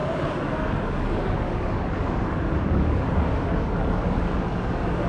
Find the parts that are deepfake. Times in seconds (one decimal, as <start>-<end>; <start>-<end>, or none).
0.0-5.1